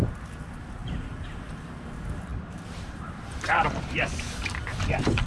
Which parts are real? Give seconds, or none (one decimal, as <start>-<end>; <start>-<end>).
0.0-0.8; 1.4-2.3